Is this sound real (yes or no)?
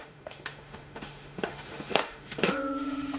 no